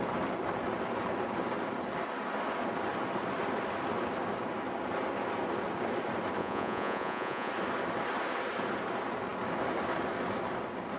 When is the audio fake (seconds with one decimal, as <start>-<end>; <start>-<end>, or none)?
6.4-7.5